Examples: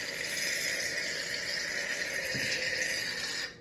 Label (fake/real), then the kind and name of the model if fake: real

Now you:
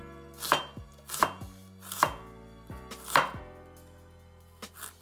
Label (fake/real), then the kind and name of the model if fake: real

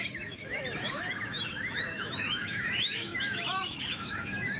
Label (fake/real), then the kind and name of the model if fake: fake, autoencoder, DAC-VAE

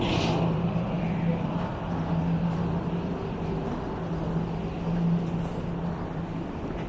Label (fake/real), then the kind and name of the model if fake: real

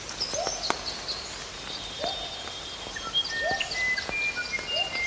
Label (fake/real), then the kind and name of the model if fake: real